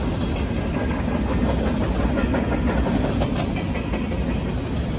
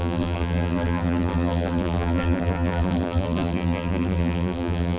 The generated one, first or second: second